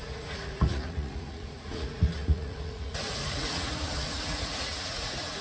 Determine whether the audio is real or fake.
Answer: fake